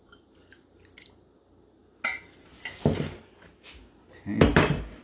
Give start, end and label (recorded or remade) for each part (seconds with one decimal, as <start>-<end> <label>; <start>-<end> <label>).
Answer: 0.0-5.0 recorded